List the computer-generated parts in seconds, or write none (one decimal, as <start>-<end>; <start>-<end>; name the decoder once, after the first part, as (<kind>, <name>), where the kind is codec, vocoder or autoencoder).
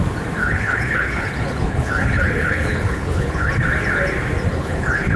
0.4-3.5 (codec, HILCodec); 4.5-5.2